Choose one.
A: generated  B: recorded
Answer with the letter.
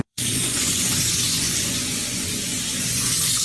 A